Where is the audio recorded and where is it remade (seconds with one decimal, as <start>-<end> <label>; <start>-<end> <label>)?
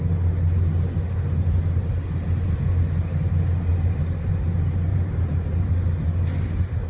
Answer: 0.0-3.7 recorded; 3.7-4.3 remade; 4.3-4.9 recorded; 4.9-5.7 remade; 5.7-6.9 recorded